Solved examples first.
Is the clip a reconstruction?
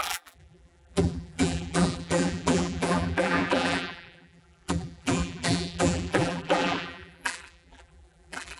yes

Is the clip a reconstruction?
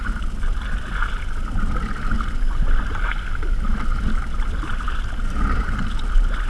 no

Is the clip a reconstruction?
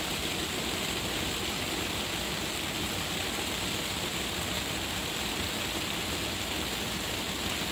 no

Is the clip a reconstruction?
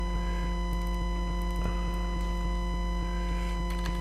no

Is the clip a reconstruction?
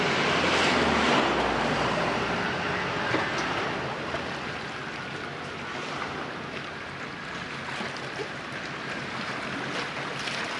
no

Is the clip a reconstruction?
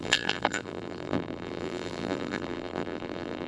yes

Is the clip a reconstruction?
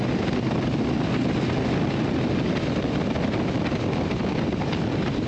no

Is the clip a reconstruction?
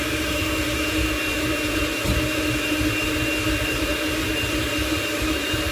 yes